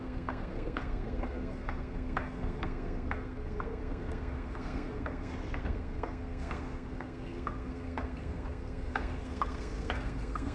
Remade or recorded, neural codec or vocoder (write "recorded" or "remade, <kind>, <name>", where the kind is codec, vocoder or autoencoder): remade, codec, SNAC